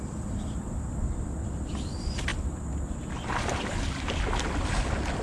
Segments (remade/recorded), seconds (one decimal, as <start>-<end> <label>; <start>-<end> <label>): 0.0-5.2 recorded